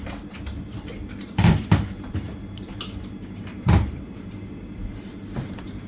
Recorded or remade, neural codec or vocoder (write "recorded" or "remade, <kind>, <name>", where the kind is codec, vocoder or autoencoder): remade, vocoder, BigVGAN v2